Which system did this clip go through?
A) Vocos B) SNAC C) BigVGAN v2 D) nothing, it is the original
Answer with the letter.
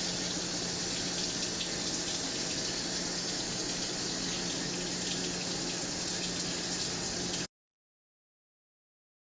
D